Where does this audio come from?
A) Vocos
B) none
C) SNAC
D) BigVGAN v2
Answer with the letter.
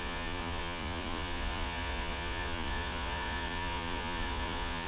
A